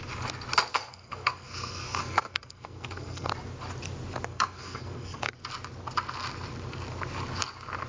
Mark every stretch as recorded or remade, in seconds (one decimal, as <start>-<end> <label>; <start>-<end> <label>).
0.0-0.7 recorded; 0.7-3.3 remade; 3.3-4.3 recorded; 4.3-5.3 remade; 5.3-7.9 recorded